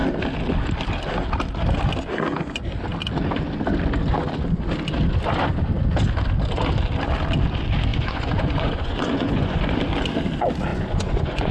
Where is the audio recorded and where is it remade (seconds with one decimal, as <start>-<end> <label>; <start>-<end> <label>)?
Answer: 0.0-7.9 recorded; 7.9-9.8 remade; 9.8-10.7 recorded; 10.7-11.5 remade